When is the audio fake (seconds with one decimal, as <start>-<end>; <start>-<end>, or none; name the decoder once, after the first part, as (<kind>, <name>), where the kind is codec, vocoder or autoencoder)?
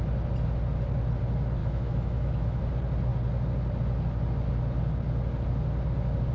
1.6-2.6 (autoencoder, DAC-VAE)